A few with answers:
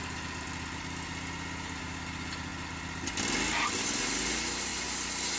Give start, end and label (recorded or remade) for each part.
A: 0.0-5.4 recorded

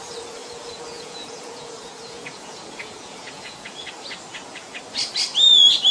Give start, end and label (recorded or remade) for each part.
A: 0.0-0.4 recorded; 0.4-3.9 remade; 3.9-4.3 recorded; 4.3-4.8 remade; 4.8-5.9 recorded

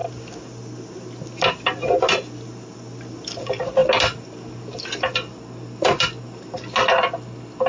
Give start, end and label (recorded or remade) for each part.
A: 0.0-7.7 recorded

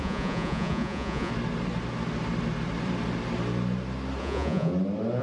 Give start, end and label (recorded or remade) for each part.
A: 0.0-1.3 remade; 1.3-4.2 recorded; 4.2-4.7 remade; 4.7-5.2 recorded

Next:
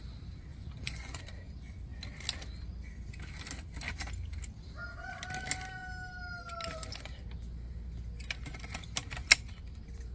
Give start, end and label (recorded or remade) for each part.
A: 0.0-0.5 recorded; 0.5-1.2 remade; 1.2-10.1 recorded

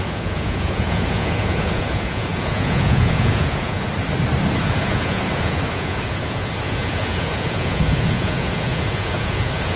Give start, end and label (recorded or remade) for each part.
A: 0.0-3.9 remade; 3.9-4.6 recorded; 4.6-9.8 remade